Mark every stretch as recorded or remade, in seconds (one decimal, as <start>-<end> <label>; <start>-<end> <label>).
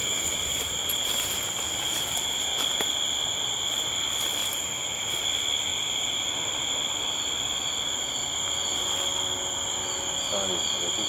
0.0-2.9 remade; 2.9-4.4 recorded; 4.4-5.0 remade; 5.0-5.7 recorded; 5.7-6.3 remade; 6.3-11.1 recorded